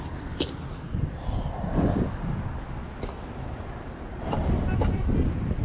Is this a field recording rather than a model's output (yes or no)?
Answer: no